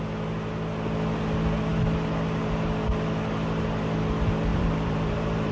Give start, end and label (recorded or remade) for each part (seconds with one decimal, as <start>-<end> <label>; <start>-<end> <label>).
0.0-4.5 recorded; 4.5-5.5 remade